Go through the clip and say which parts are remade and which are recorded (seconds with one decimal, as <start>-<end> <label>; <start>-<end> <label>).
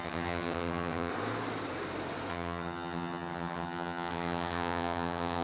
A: 0.0-1.1 remade; 1.1-2.3 recorded; 2.3-5.4 remade